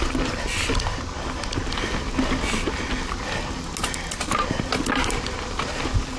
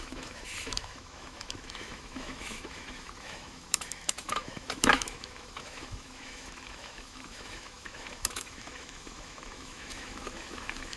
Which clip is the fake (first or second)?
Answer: second